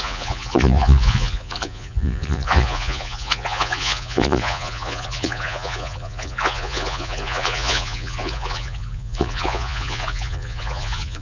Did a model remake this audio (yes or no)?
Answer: yes